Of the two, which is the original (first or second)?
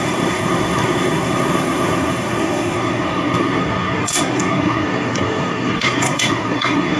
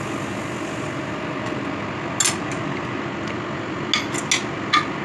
second